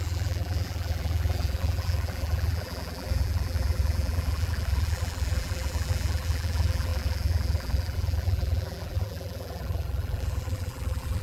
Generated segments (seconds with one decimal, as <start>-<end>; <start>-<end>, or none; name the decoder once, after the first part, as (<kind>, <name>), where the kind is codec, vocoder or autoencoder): 0.0-11.2 (vocoder, BigVGAN v2)